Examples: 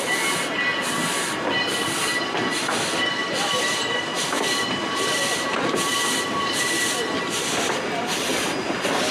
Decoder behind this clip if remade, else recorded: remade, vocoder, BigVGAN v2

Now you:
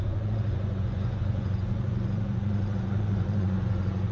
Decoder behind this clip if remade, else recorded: remade, vocoder, Vocos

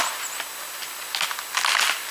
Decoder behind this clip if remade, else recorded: recorded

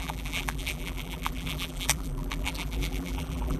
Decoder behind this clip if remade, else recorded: remade, vocoder, BigVGAN v2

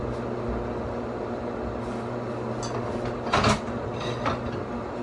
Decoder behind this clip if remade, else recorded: recorded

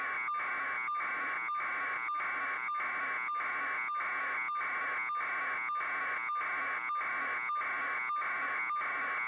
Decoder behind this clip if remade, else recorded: recorded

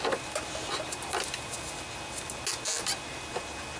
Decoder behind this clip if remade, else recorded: recorded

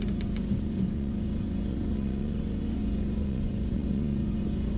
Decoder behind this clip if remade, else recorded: remade, vocoder, Vocos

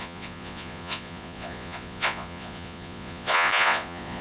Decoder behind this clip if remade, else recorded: remade, vocoder, Vocos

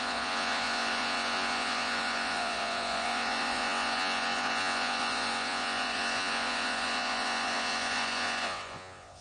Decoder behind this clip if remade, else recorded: remade, vocoder, Vocos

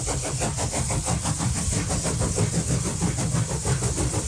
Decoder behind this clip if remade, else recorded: recorded